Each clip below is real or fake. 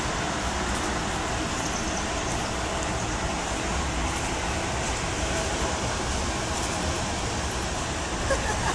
real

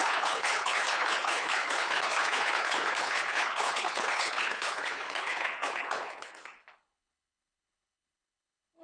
fake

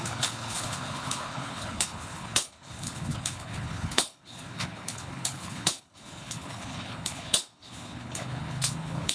fake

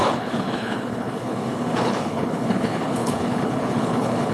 fake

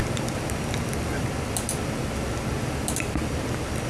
real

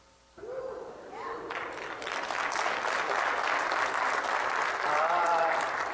real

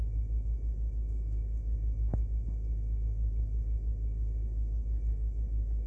real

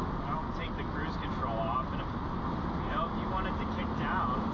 real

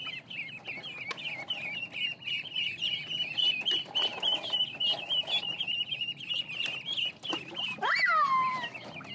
real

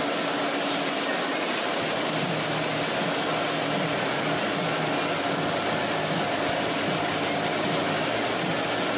real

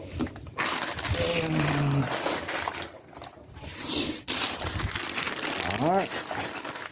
real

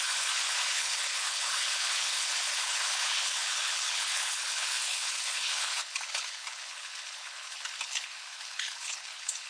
fake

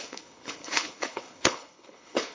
fake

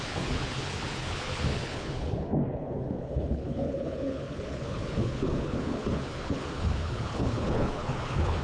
fake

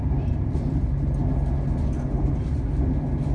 real